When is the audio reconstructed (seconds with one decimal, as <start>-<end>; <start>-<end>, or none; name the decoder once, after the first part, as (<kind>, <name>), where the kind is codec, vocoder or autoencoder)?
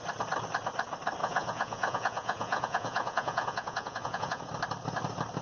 1.2-4.4 (vocoder, Vocos)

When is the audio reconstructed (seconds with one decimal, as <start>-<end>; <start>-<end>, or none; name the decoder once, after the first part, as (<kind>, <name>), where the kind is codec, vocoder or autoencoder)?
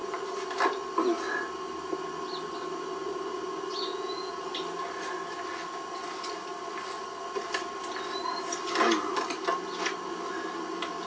3.9-4.4 (vocoder, Vocos)